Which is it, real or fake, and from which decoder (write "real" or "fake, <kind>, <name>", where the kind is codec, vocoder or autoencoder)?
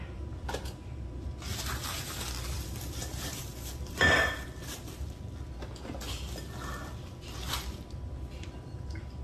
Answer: real